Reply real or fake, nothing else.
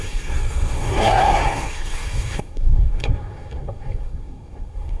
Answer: fake